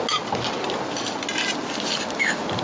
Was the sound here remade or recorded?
recorded